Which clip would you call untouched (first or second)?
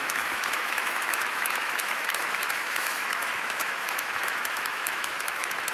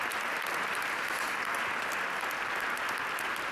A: second